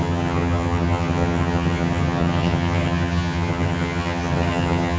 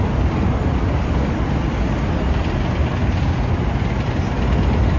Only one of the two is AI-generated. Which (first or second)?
first